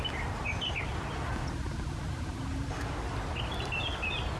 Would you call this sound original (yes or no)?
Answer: yes